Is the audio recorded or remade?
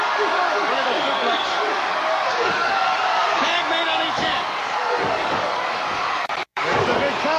remade